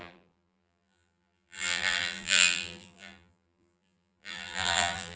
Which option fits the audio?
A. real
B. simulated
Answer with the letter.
B